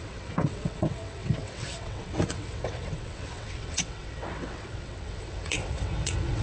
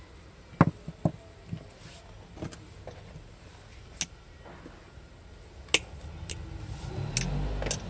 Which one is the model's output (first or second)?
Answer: first